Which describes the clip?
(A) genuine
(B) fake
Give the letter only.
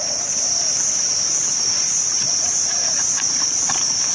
B